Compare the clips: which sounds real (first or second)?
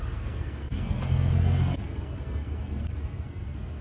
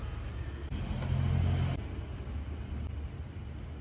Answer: second